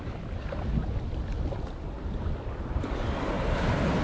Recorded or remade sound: recorded